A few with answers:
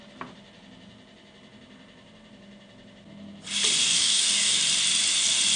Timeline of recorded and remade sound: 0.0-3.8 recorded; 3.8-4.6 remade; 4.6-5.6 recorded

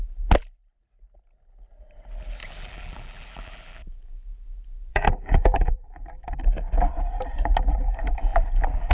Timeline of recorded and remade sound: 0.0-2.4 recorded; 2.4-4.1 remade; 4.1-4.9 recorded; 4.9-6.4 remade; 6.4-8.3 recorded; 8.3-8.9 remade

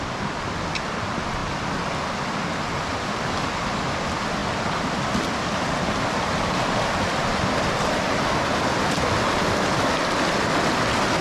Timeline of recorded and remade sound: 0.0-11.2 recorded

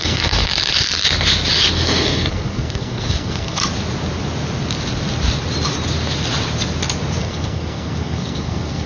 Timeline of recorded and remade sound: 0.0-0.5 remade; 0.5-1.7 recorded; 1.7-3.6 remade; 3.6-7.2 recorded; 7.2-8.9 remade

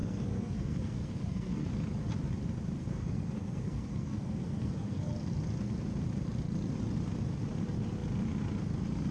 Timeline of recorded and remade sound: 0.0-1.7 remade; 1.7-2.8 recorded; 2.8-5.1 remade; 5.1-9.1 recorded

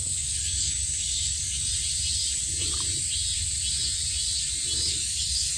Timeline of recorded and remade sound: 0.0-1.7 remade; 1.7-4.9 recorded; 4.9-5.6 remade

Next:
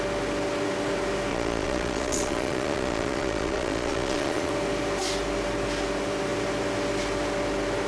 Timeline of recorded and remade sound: 0.0-1.3 recorded; 1.3-4.5 remade; 4.5-7.9 recorded